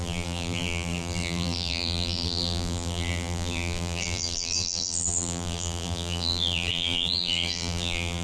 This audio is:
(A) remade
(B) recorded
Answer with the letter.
A